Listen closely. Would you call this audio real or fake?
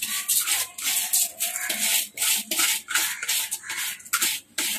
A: real